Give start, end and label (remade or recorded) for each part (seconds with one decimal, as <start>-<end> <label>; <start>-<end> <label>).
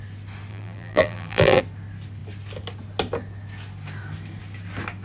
0.0-0.5 recorded; 0.5-1.6 remade; 1.6-5.0 recorded